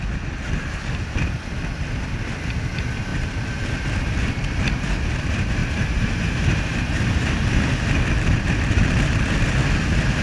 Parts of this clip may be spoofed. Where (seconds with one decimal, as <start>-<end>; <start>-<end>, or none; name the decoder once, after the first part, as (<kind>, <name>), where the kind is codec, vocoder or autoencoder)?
3.1-3.8 (vocoder, BigVGAN v2); 5.6-7.3